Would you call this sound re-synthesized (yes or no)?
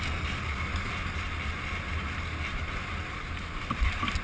no